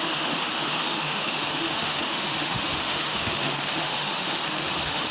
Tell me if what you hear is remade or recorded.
remade